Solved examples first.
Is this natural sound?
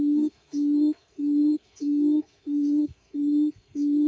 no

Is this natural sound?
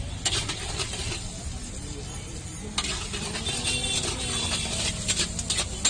yes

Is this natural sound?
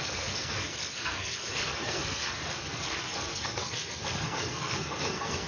no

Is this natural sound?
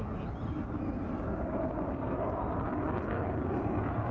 yes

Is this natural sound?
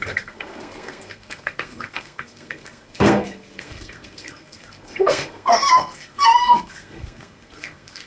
no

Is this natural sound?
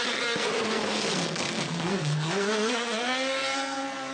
no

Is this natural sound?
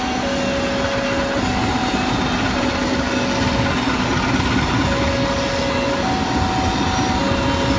yes